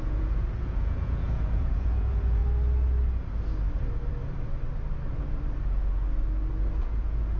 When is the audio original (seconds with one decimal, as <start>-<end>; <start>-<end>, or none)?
2.4-6.8